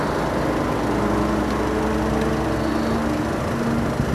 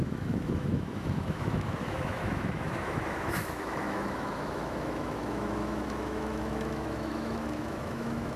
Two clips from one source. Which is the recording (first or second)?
first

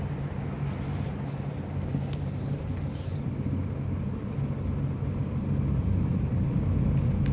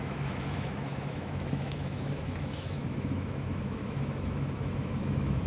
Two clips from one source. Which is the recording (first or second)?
first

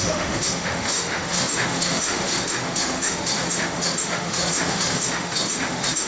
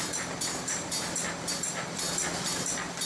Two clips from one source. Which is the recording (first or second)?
second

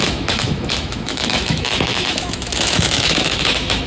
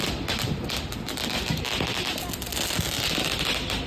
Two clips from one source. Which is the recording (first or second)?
second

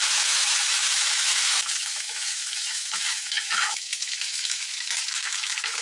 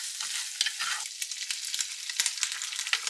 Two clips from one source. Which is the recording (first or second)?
second